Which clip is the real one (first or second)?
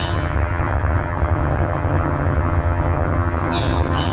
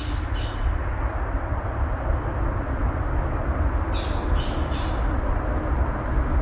second